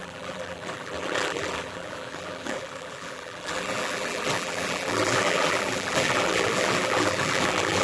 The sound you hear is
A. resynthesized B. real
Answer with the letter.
A